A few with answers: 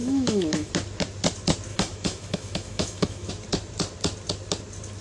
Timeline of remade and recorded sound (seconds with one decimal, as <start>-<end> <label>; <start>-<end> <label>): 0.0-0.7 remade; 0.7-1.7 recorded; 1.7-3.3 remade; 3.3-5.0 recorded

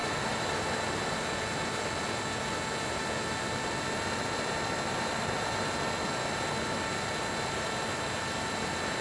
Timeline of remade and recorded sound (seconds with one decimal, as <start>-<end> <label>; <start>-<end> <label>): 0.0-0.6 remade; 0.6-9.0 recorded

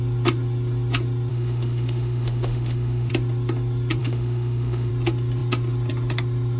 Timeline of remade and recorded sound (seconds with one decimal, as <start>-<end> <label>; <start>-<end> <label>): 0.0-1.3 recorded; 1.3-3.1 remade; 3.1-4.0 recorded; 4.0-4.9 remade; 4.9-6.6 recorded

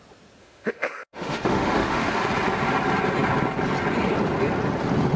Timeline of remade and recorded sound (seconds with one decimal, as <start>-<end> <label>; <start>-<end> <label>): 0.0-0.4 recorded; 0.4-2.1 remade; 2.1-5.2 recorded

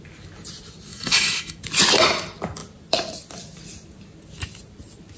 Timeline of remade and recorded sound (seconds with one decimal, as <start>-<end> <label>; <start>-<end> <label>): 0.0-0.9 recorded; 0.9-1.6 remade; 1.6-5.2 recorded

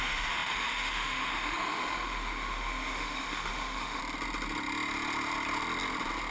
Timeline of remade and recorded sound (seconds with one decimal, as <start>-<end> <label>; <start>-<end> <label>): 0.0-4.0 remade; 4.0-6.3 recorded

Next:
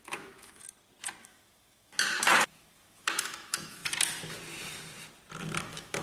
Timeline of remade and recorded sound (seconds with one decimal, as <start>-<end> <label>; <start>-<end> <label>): 0.0-0.6 remade; 0.6-1.2 recorded; 1.2-3.8 remade; 3.8-5.6 recorded; 5.6-6.0 remade